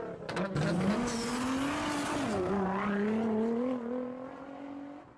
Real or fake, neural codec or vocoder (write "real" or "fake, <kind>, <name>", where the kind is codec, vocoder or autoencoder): real